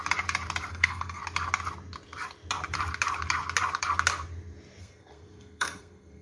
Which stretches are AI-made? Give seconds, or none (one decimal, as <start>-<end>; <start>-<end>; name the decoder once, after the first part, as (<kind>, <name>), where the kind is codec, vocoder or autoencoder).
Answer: 0.7-1.2 (codec, SNAC); 4.8-6.2